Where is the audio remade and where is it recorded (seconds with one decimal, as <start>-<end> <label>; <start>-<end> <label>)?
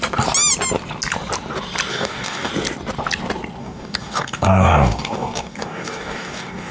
0.0-1.9 recorded; 1.9-2.5 remade; 2.5-3.6 recorded; 3.6-6.7 remade